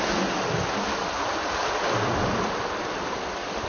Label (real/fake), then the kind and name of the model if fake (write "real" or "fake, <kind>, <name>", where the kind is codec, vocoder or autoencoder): real